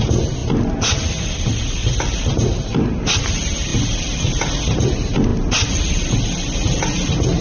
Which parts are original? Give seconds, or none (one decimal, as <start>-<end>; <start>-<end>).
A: 0.0-7.4